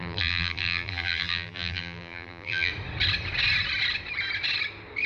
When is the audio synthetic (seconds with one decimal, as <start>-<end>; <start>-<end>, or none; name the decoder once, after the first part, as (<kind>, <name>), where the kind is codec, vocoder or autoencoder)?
0.0-2.7 (vocoder, BigVGAN v2)